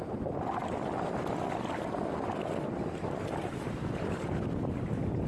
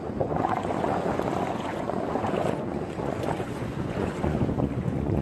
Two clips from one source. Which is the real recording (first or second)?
first